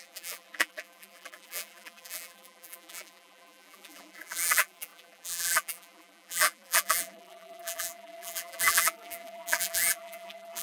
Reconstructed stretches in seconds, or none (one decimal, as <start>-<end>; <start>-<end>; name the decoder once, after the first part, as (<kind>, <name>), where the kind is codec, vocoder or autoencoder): 0.0-10.6 (vocoder, BigVGAN v2)